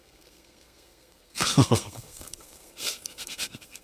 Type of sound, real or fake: fake